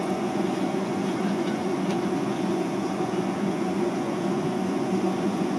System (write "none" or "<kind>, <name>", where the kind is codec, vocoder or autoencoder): vocoder, Vocos